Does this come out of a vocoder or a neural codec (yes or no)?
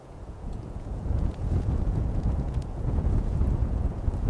yes